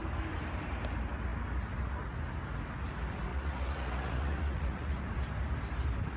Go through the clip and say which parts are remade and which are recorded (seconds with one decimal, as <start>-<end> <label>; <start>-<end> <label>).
0.0-3.3 recorded; 3.3-5.0 remade; 5.0-6.2 recorded